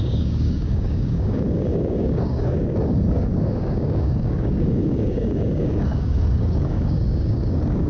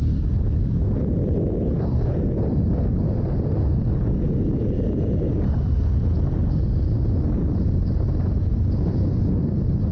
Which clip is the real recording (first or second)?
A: second